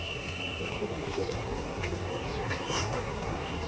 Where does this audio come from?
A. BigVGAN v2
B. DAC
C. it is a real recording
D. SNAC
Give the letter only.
D